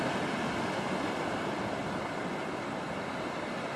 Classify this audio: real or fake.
real